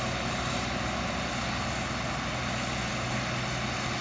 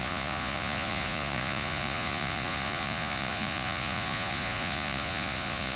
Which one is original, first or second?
first